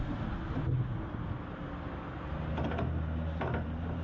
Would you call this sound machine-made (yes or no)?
no